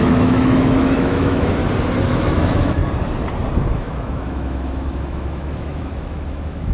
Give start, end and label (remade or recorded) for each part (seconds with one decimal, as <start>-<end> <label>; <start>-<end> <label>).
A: 0.0-1.6 remade; 1.6-2.1 recorded; 2.1-2.8 remade; 2.8-3.7 recorded; 3.7-6.7 remade